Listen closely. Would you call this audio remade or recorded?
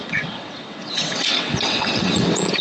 remade